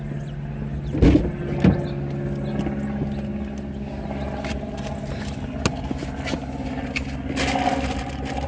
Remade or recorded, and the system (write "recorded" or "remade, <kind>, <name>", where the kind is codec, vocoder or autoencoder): recorded